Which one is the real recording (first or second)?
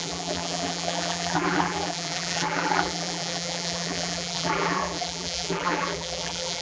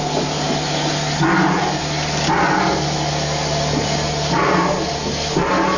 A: second